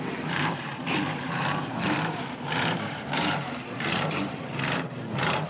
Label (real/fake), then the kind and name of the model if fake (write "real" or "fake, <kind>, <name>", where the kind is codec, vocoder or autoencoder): fake, vocoder, BigVGAN v2